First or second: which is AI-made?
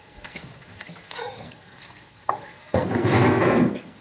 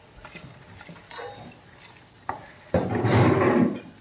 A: first